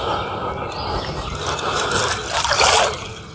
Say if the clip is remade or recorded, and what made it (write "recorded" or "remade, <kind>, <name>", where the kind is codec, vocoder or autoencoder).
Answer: recorded